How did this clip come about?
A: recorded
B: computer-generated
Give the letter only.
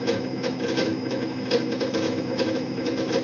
B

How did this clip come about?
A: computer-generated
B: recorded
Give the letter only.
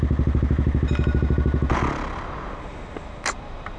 B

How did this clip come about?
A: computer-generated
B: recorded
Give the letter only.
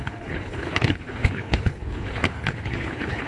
A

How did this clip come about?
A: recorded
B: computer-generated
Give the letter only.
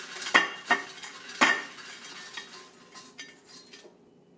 A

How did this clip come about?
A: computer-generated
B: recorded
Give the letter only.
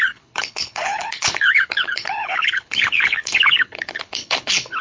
A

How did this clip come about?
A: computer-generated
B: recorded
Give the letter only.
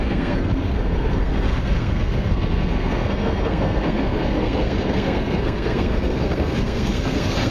A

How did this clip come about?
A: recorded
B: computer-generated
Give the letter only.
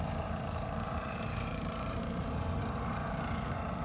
B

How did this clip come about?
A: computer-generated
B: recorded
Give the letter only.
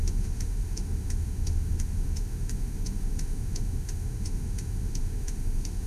A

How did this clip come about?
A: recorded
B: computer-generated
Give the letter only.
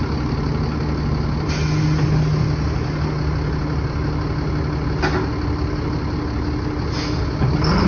A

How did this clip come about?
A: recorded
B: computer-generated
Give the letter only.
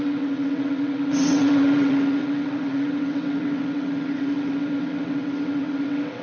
B